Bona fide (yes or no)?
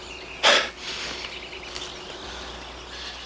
yes